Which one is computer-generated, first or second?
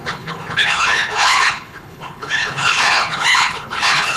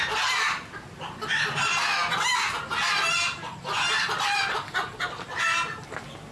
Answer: first